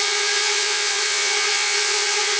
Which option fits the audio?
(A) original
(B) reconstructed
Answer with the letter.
B